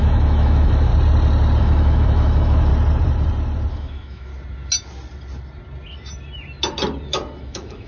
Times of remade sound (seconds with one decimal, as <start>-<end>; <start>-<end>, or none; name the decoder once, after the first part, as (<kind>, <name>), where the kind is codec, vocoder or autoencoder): 0.0-0.9 (autoencoder, DAC-VAE); 1.6-2.7; 3.7-4.3; 7.4-7.9